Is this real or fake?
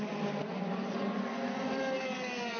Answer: real